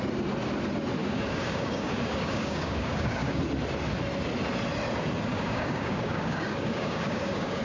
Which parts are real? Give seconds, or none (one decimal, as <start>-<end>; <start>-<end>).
0.0-1.0; 3.4-5.3